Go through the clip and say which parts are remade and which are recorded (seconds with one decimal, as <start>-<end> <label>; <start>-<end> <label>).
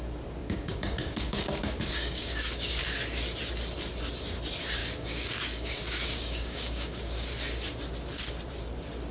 0.0-0.4 recorded; 0.4-2.8 remade; 2.8-4.8 recorded; 4.8-7.0 remade; 7.0-9.1 recorded